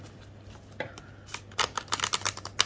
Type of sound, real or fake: real